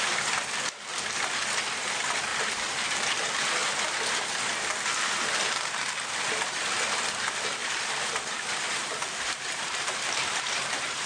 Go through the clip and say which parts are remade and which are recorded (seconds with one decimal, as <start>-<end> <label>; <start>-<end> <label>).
0.0-2.3 recorded; 2.3-3.0 remade; 3.0-7.6 recorded; 7.6-10.6 remade; 10.6-11.1 recorded